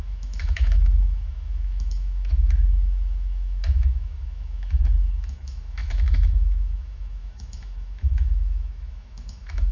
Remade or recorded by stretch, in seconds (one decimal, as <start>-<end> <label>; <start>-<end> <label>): 0.0-9.7 remade